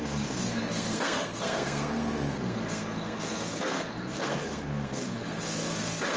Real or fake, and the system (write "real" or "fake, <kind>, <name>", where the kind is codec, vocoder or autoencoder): fake, codec, SNAC